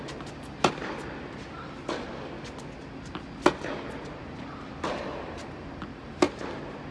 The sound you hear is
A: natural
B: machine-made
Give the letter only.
A